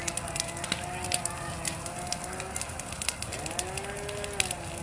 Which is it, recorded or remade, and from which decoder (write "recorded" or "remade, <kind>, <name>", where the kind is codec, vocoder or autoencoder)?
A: recorded